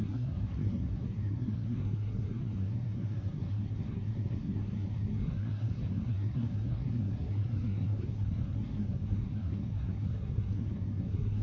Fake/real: fake